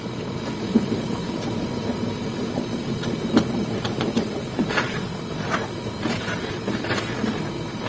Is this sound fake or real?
fake